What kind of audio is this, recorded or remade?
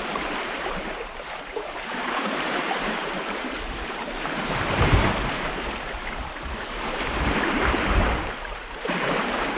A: remade